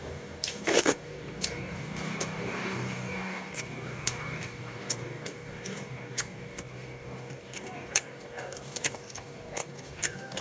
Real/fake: fake